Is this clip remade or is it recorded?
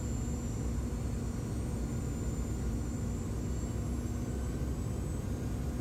recorded